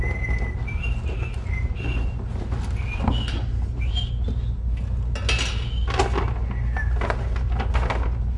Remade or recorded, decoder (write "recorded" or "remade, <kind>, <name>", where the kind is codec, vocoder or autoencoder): recorded